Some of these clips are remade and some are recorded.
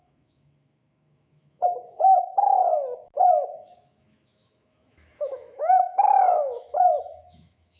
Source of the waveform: remade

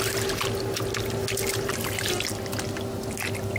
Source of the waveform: recorded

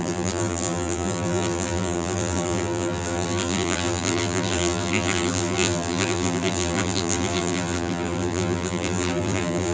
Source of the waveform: remade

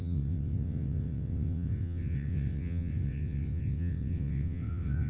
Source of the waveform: remade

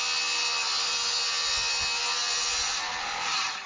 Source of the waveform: recorded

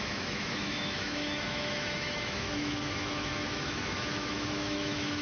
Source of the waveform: remade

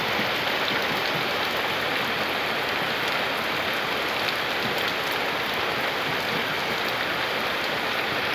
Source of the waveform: recorded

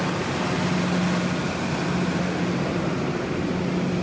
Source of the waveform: recorded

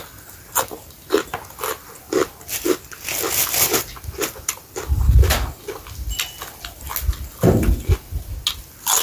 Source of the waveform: recorded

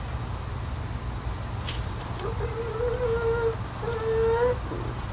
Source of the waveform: recorded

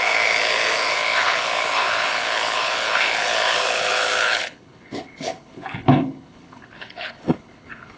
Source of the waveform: remade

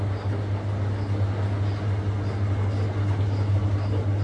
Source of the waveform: recorded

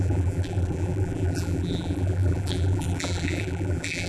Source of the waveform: remade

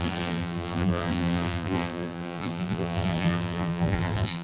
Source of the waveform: remade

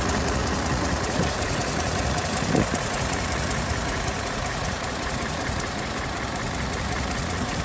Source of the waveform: remade